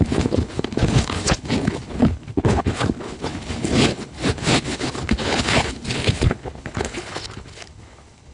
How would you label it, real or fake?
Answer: fake